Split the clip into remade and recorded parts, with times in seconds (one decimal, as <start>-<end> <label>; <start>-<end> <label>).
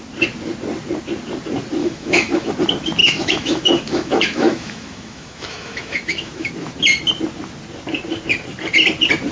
0.0-1.8 recorded; 1.8-2.5 remade; 2.5-3.0 recorded; 3.0-6.5 remade; 6.5-9.3 recorded